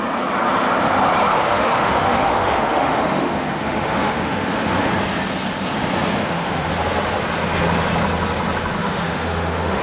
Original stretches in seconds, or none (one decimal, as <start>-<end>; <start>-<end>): 0.0-1.3; 4.9-6.2; 6.7-8.8